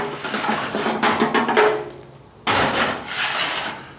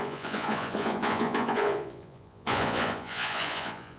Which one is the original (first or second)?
first